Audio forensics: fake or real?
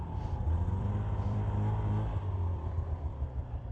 fake